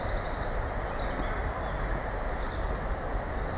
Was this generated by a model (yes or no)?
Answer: no